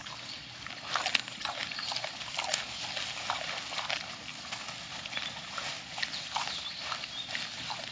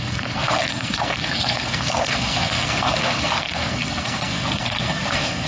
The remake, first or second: second